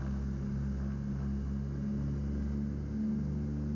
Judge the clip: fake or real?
real